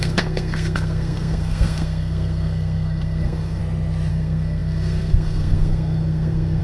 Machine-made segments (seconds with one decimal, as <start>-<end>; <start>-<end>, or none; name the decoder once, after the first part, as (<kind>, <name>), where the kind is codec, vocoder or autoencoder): 0.0-3.6 (codec, SNAC); 4.1-6.6